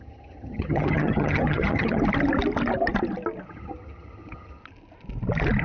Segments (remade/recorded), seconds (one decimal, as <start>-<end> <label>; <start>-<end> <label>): 0.0-2.0 remade; 2.0-3.5 recorded; 3.5-4.6 remade; 4.6-5.6 recorded